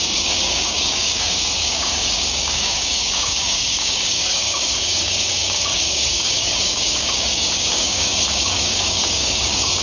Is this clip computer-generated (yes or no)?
yes